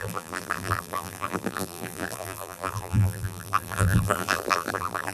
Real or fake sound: fake